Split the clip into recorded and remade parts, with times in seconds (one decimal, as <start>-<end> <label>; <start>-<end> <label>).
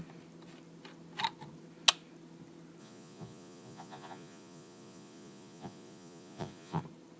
0.0-2.8 recorded; 2.8-6.8 remade; 6.8-7.2 recorded